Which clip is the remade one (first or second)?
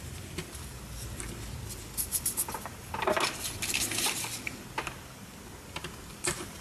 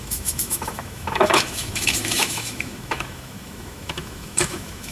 second